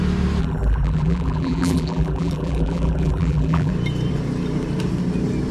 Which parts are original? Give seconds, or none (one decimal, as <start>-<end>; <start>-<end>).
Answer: 0.0-0.4; 3.7-5.5